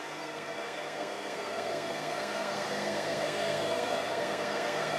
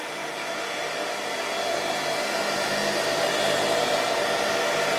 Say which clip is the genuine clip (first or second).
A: second